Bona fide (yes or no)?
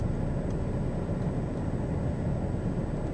yes